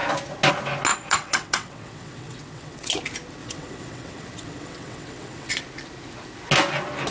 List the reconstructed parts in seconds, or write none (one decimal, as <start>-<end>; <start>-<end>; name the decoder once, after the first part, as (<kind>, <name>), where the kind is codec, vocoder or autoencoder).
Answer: 0.9-2.9 (vocoder, WaveNeXt); 3.4-5.6